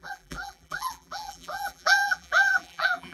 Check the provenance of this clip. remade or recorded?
remade